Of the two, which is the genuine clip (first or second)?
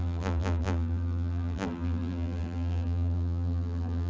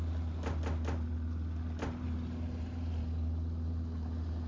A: second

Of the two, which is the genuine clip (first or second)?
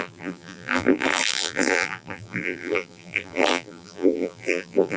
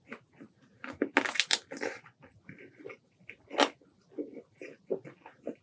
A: second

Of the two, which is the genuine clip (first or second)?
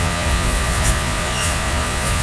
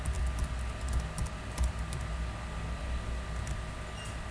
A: second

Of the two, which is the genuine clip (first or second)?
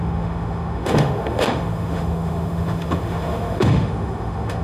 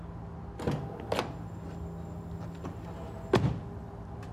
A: second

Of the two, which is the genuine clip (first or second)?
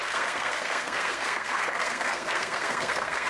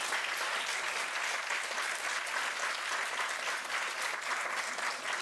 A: second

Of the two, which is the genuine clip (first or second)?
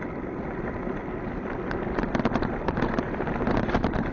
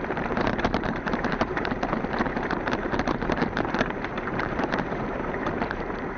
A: first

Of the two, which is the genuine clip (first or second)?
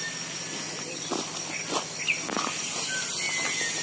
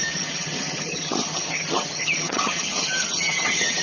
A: first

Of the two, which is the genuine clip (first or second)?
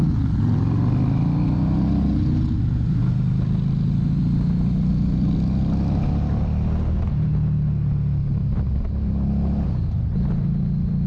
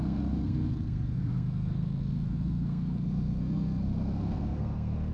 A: first